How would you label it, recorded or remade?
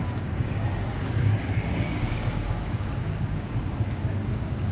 remade